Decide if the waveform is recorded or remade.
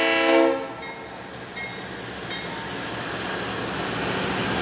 recorded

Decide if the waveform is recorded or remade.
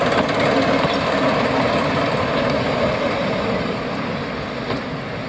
recorded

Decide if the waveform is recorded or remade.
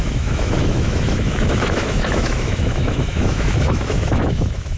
remade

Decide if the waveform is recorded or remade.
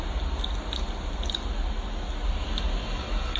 recorded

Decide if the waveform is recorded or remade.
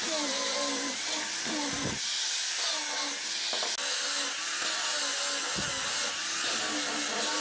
recorded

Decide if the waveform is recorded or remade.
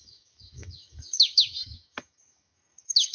remade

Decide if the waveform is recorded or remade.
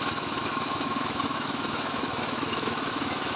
remade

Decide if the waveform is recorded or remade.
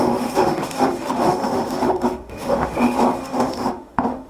remade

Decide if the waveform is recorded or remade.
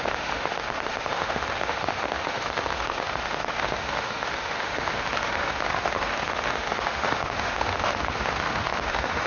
remade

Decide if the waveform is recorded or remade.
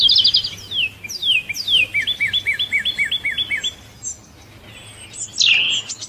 recorded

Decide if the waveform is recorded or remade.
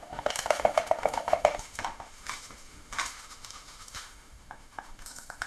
remade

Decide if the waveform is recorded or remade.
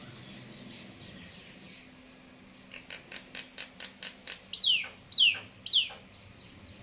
recorded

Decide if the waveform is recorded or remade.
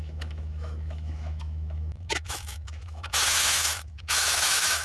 remade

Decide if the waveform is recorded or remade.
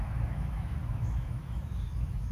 remade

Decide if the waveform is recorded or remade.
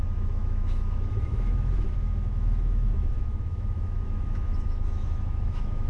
remade